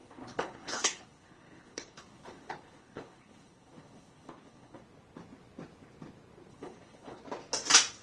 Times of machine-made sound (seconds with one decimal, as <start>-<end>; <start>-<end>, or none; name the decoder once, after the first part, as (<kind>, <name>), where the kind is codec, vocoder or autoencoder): 0.0-4.8 (codec, HILCodec); 6.5-7.2

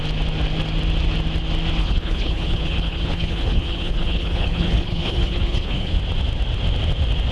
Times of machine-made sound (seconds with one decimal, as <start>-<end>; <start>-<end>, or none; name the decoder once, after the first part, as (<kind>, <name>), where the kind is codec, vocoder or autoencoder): 1.8-6.0 (codec, HILCodec)

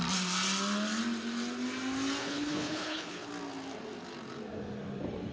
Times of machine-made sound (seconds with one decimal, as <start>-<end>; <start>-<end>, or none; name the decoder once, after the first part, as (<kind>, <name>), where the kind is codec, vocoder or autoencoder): 2.2-3.3 (codec, HILCodec)

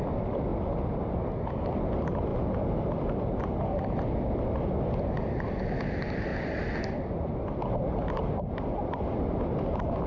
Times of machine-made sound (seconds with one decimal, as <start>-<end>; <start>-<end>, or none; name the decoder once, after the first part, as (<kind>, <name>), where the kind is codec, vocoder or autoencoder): none